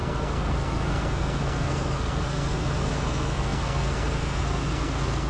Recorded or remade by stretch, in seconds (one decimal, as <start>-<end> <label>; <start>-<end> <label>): 0.0-5.3 remade